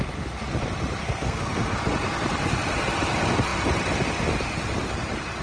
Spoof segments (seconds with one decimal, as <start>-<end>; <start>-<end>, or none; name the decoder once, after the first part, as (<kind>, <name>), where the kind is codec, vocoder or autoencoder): 1.0-1.8 (codec, SNAC)